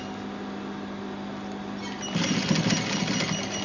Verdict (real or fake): real